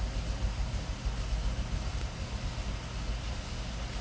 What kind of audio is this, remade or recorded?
recorded